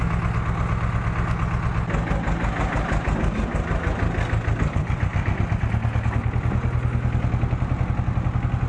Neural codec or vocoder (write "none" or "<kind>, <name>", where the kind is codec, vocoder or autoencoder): none